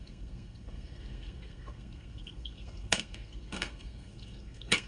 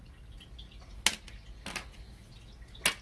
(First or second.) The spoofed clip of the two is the first